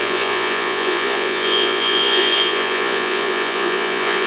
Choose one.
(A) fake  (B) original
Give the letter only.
A